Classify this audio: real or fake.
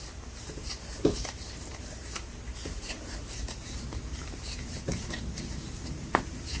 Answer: fake